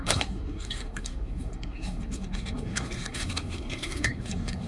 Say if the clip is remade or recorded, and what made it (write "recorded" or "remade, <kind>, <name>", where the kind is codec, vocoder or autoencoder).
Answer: remade, codec, SNAC